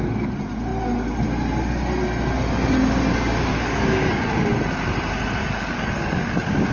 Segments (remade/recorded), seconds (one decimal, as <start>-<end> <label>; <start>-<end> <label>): 0.0-3.5 recorded; 3.5-4.2 remade; 4.2-5.4 recorded; 5.4-6.7 remade